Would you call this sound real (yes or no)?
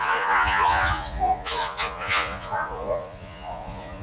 no